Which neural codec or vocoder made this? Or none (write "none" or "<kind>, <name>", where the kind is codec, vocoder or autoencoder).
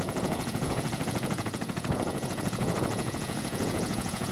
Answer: vocoder, Vocos